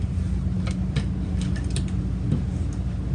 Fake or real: real